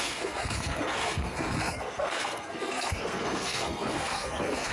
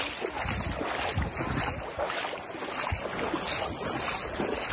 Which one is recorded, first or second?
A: second